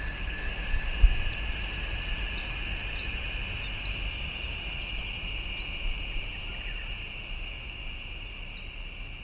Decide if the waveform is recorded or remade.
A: recorded